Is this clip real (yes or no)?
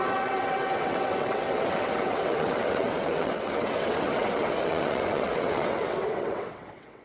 no